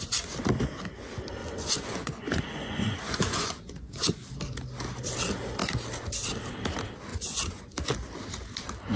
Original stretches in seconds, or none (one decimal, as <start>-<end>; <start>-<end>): 0.0-1.4; 4.0-7.1; 7.6-9.0

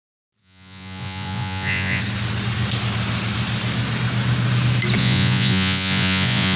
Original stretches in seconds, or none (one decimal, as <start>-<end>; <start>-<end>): 0.0-0.4; 2.0-5.0

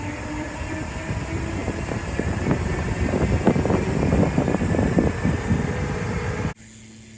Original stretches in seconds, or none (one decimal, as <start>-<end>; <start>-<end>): 0.0-7.2